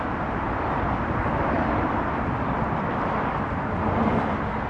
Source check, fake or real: fake